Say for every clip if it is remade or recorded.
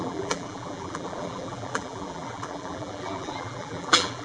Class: remade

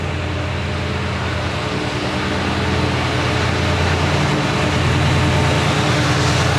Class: recorded